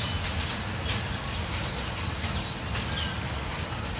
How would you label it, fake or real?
real